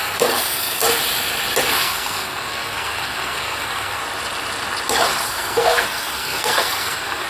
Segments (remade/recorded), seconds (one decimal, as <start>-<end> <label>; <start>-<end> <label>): 0.0-0.8 remade; 0.8-1.7 recorded; 1.7-4.0 remade; 4.0-5.3 recorded; 5.3-7.3 remade